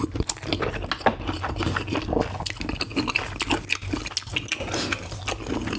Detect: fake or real real